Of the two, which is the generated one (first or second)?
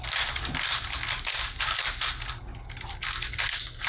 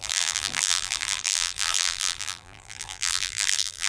second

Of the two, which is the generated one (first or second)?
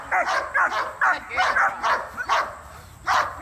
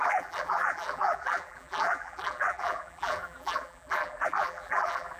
second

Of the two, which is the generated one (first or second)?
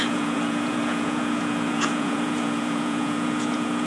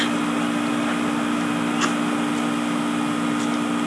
first